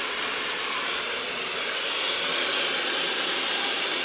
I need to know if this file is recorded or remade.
recorded